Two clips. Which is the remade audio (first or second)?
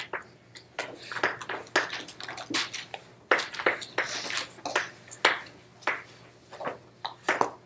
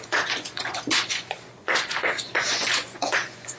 second